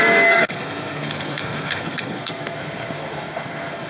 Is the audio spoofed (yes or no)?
yes